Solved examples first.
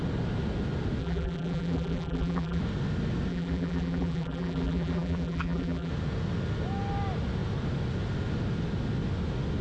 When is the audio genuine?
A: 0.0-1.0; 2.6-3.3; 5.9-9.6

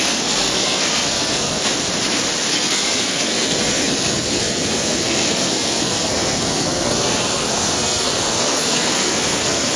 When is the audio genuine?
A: 1.7-2.5

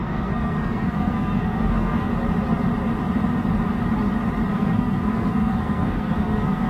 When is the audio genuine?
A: 2.1-4.5

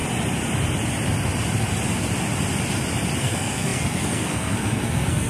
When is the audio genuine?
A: 0.0-3.2

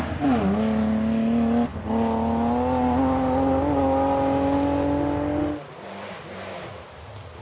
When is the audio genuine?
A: 0.0-7.4

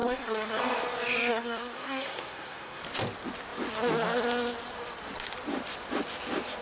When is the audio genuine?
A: 0.6-1.3; 2.8-6.6